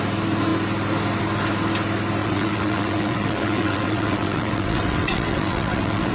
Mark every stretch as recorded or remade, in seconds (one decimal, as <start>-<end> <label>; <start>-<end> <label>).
0.0-2.2 recorded; 2.2-6.1 remade